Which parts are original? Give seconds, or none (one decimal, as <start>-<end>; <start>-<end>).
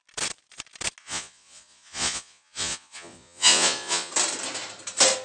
0.0-1.0; 4.1-5.2